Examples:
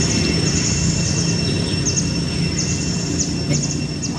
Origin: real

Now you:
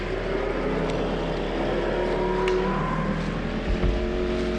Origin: real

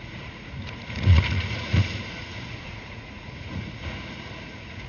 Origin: fake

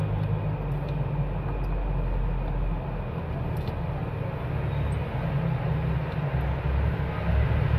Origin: real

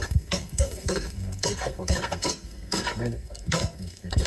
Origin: fake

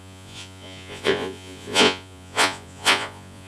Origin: fake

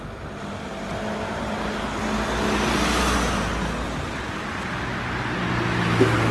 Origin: real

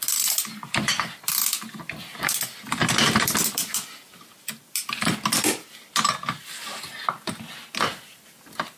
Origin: real